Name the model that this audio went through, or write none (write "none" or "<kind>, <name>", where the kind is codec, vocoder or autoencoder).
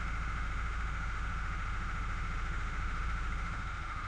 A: autoencoder, DAC-VAE